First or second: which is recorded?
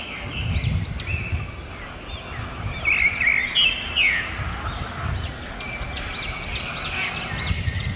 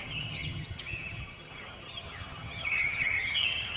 first